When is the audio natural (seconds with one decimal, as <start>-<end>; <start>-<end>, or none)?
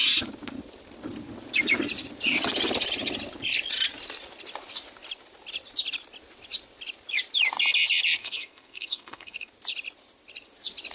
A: 0.0-8.2; 9.5-10.9